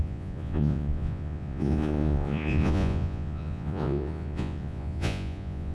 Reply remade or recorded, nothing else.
remade